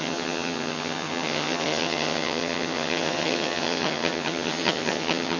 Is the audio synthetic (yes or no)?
yes